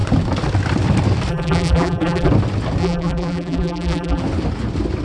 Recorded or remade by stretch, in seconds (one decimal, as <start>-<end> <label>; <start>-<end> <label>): 0.0-1.3 recorded; 1.3-2.3 remade; 2.3-2.8 recorded; 2.8-4.2 remade; 4.2-5.0 recorded